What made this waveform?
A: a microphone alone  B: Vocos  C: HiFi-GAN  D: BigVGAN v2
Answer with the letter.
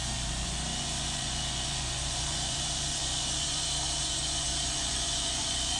B